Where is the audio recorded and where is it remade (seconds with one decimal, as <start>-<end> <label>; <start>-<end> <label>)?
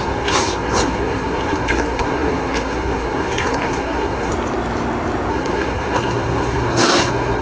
0.0-4.3 remade; 4.3-5.3 recorded; 5.3-7.4 remade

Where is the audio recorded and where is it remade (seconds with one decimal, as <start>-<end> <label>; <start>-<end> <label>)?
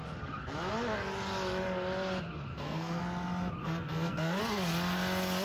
0.0-2.5 recorded; 2.5-3.0 remade; 3.0-3.6 recorded; 3.6-4.4 remade; 4.4-5.4 recorded